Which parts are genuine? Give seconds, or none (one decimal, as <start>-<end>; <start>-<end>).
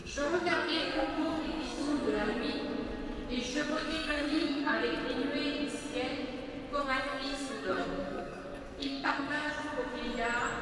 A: 2.4-3.5; 4.8-6.8; 9.5-10.6